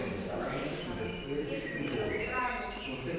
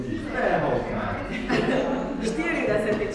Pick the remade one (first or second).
first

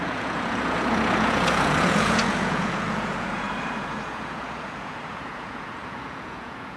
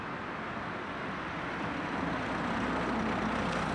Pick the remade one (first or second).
first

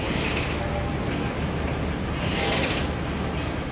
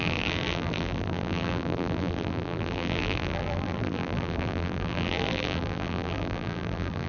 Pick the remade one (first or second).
second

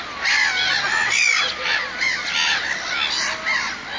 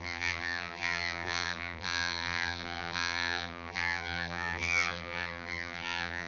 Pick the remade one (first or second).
second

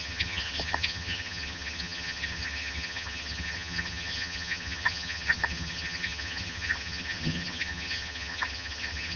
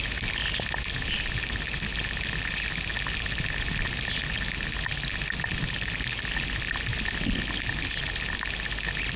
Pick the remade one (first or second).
first